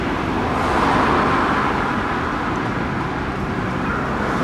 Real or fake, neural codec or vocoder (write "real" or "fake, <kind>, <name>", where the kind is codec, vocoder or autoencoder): real